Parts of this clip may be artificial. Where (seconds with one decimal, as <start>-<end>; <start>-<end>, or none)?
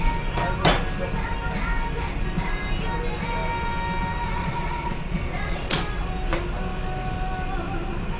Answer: 4.4-5.8